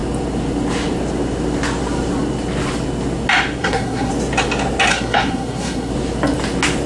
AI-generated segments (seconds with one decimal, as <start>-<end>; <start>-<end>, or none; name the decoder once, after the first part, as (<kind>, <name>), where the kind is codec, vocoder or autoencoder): 3.6-4.1 (codec, SNAC); 4.9-5.9